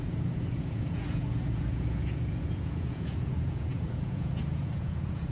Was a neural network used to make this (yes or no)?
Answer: yes